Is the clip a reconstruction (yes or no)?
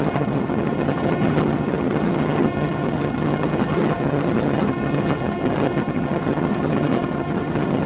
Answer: yes